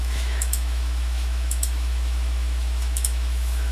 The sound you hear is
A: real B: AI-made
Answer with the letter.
B